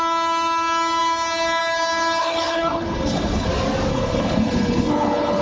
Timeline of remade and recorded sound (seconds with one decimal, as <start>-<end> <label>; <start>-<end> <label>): 0.0-2.2 recorded; 2.2-3.5 remade; 3.5-3.9 recorded; 3.9-5.4 remade